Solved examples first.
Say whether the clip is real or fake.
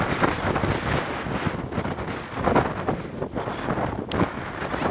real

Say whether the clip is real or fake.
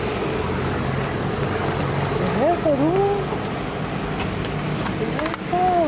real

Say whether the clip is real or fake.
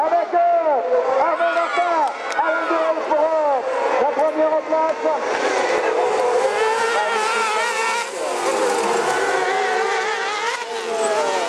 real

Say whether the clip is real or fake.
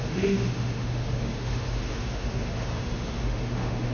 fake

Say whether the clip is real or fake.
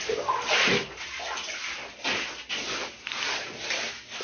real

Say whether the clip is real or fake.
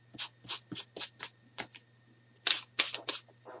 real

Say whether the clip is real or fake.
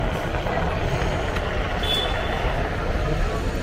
real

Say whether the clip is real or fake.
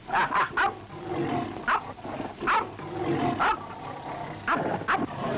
real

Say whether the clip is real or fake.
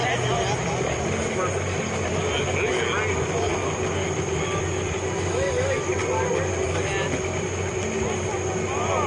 real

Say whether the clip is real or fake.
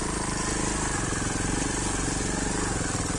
real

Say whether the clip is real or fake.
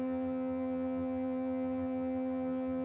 fake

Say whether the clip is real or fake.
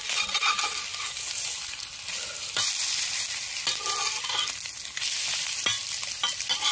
real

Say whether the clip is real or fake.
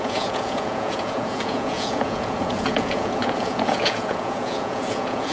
fake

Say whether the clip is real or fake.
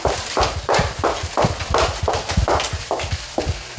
real